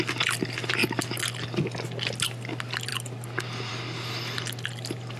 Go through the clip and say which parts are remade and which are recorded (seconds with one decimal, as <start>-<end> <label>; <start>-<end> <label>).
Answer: 0.0-5.2 recorded